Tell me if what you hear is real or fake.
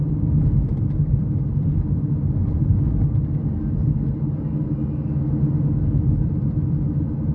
real